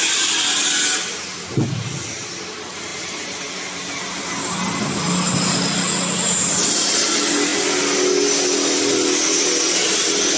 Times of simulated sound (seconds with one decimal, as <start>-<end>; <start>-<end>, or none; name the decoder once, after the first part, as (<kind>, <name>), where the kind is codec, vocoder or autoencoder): none